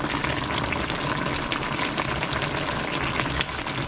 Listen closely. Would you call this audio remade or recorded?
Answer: recorded